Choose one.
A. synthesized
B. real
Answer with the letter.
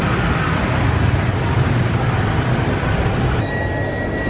B